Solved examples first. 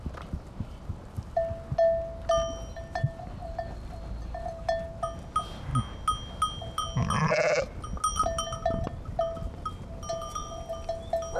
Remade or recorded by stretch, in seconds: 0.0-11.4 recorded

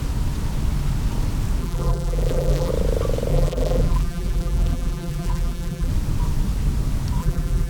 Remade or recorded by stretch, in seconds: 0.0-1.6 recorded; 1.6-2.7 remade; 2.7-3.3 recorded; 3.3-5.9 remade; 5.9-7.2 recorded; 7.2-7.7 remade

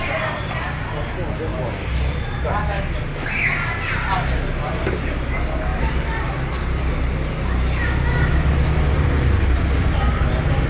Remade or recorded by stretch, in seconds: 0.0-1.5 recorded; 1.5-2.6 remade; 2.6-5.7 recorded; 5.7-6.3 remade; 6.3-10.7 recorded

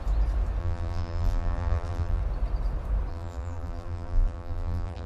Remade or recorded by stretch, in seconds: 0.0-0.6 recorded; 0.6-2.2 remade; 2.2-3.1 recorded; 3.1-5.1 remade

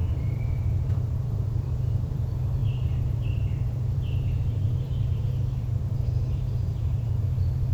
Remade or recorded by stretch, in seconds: 0.0-2.2 remade; 2.2-2.6 recorded; 2.6-7.2 remade; 7.2-7.7 recorded

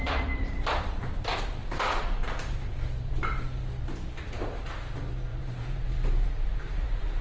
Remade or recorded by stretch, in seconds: 0.0-0.8 remade; 0.8-1.6 recorded; 1.6-3.2 remade; 3.2-5.3 recorded; 5.3-7.2 remade

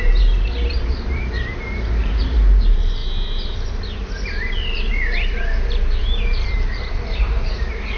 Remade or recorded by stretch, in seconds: 0.0-3.0 remade; 3.0-4.9 recorded; 4.9-8.0 remade

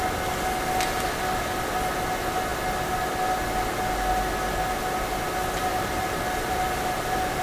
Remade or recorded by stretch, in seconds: 0.0-5.7 recorded; 5.7-7.4 remade